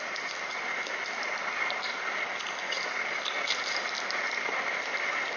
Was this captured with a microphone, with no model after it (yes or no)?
yes